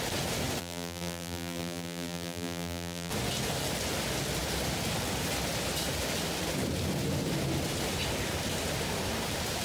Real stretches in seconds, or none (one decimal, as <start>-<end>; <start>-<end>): 0.0-0.6; 3.1-9.6